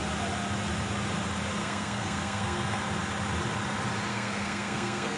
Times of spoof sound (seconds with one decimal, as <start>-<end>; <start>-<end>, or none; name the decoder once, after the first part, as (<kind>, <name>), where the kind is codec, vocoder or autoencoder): 1.6-2.8 (codec, SNAC); 4.1-5.2